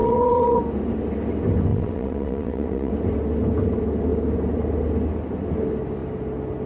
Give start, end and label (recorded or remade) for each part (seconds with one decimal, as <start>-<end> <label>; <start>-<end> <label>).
0.0-0.6 remade; 0.6-1.7 recorded; 1.7-2.9 remade; 2.9-6.7 recorded